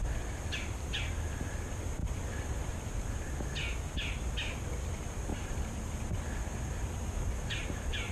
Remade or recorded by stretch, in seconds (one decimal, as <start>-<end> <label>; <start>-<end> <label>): 0.0-2.0 recorded; 2.0-2.7 remade; 2.7-5.3 recorded; 5.3-8.1 remade